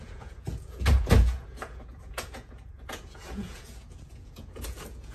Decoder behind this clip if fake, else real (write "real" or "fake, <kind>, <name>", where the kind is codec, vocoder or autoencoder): fake, vocoder, Vocos